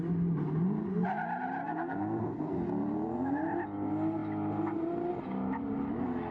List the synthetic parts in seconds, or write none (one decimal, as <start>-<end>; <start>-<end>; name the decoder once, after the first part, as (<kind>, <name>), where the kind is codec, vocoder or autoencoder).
1.6-2.6 (codec, SNAC)